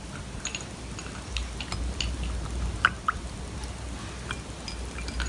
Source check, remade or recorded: recorded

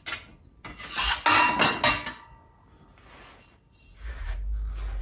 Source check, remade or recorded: recorded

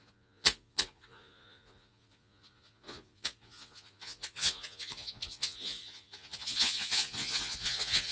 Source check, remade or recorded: remade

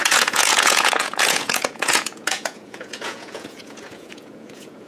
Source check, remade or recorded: remade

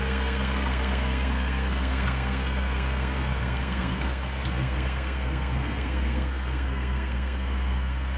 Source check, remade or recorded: remade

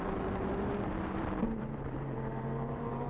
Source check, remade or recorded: remade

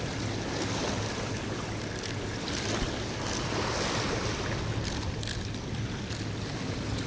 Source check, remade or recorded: recorded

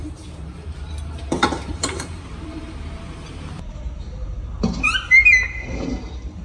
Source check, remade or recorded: remade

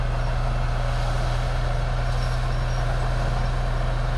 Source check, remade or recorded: recorded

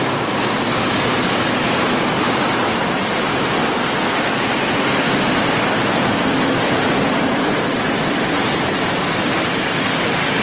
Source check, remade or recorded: recorded